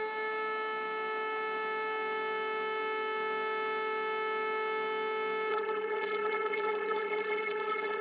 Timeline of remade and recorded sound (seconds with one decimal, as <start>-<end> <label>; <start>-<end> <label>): 0.0-5.5 recorded; 5.5-8.0 remade